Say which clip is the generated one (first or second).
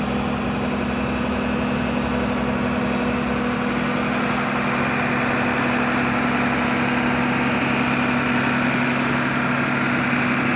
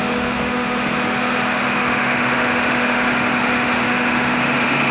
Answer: second